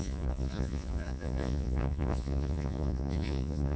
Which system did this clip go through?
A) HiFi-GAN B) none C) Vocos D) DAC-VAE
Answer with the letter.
C